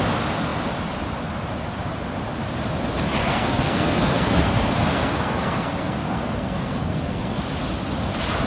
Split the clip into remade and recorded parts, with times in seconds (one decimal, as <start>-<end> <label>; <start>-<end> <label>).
0.0-3.2 recorded; 3.2-7.4 remade; 7.4-8.5 recorded